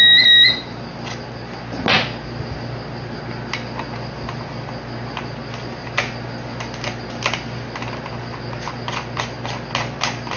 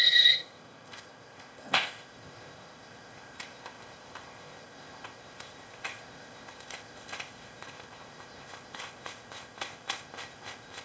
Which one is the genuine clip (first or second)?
first